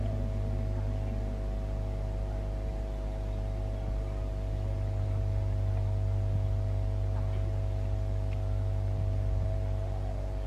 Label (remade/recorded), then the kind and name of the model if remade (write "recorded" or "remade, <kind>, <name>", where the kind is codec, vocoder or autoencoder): recorded